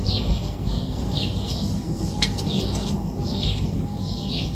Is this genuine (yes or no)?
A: no